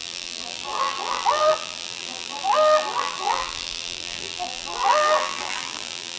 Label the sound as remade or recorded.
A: remade